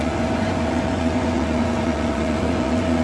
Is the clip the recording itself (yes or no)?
no